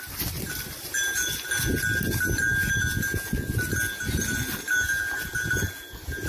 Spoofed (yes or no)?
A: no